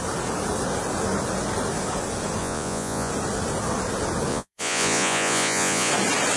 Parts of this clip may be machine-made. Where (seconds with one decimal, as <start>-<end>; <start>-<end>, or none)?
2.4-3.1; 4.3-5.9